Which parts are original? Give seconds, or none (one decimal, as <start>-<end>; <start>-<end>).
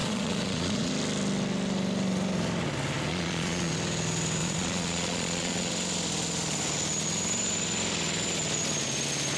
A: 0.9-3.1; 3.7-4.4; 5.7-9.4